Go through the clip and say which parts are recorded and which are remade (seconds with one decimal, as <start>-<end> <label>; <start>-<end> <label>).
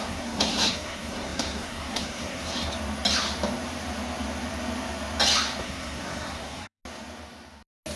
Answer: 0.0-2.7 remade; 2.7-5.6 recorded; 5.6-6.8 remade; 6.8-8.0 recorded